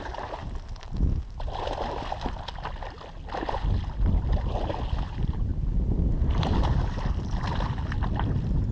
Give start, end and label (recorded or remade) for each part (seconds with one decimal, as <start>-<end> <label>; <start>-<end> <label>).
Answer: 0.0-8.7 recorded

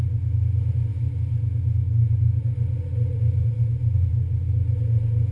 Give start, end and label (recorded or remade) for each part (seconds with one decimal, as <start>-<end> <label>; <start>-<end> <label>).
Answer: 0.0-5.3 recorded

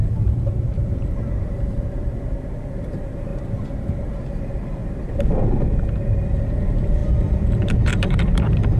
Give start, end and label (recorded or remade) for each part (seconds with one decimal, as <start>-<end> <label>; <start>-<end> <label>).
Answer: 0.0-3.3 remade; 3.3-3.9 recorded; 3.9-4.8 remade; 4.8-6.2 recorded; 6.2-8.8 remade